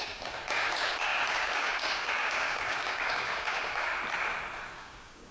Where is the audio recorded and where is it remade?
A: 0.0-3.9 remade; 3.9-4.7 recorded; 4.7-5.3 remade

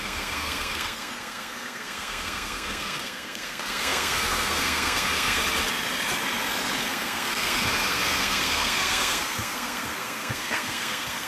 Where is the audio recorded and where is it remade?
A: 0.0-5.4 remade; 5.4-6.8 recorded; 6.8-11.3 remade

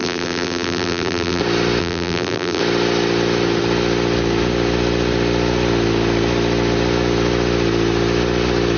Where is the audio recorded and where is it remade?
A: 0.0-1.4 remade; 1.4-1.8 recorded; 1.8-2.6 remade; 2.6-8.8 recorded

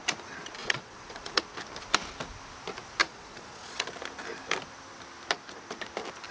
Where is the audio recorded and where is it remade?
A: 0.0-0.6 recorded; 0.6-1.4 remade; 1.4-3.0 recorded; 3.0-3.9 remade; 3.9-6.3 recorded

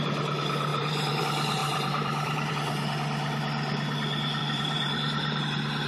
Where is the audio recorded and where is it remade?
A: 0.0-0.7 recorded; 0.7-1.2 remade; 1.2-1.6 recorded; 1.6-2.5 remade; 2.5-4.4 recorded; 4.4-5.4 remade; 5.4-5.9 recorded

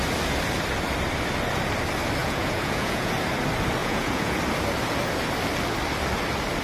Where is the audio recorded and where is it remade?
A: 0.0-2.2 recorded; 2.2-3.1 remade; 3.1-3.8 recorded; 3.8-4.4 remade; 4.4-6.6 recorded

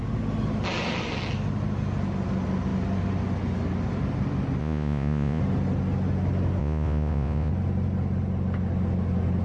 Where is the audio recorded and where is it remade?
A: 0.0-4.6 recorded; 4.6-5.4 remade; 5.4-6.6 recorded; 6.6-7.5 remade; 7.5-9.4 recorded